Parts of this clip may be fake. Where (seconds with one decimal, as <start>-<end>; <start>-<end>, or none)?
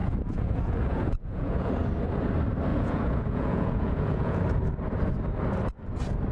0.0-1.7; 2.7-4.4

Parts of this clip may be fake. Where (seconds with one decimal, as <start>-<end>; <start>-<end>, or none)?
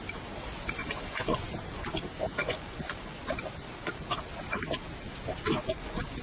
0.8-1.5; 2.4-3.2; 5.6-6.2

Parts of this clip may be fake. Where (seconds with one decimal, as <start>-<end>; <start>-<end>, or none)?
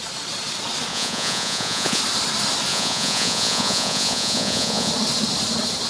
0.9-2.0; 2.7-4.9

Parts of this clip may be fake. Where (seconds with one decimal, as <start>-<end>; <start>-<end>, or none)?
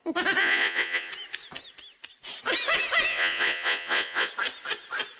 0.4-1.1; 3.1-4.3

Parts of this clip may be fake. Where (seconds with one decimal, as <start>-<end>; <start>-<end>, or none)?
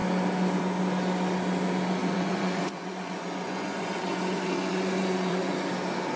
2.0-5.7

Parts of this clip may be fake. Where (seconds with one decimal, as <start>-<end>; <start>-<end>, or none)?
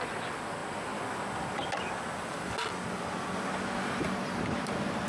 none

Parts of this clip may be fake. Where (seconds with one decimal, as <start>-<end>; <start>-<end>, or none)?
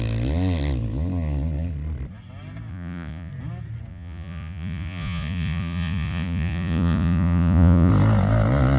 2.7-3.3; 3.9-7.9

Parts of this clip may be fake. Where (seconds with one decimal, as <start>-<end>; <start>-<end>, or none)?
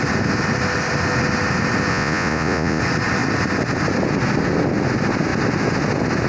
1.9-2.8